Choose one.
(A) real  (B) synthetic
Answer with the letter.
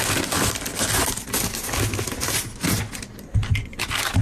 A